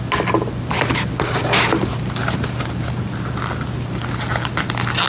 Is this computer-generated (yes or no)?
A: no